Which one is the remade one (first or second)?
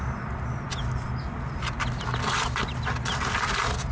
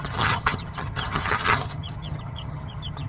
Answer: second